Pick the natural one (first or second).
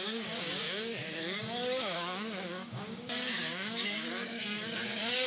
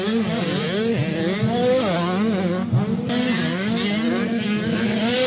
second